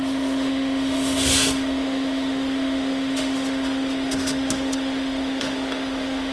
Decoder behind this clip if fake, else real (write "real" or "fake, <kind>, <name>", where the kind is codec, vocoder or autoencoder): fake, autoencoder, DAC-VAE